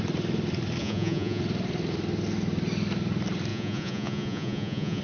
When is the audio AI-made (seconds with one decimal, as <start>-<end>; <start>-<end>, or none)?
0.8-1.4; 3.5-5.0